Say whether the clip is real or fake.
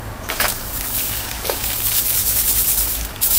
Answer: fake